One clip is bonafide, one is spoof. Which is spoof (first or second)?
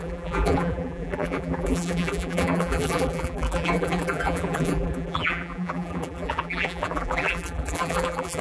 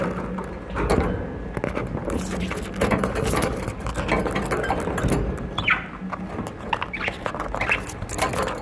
first